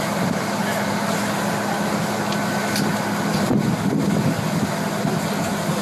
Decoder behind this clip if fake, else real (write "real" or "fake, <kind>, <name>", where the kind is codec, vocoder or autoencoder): real